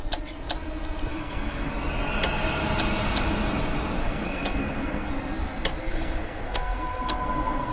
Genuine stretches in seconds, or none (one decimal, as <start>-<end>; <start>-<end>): 0.0-1.1; 1.7-4.0; 5.1-5.8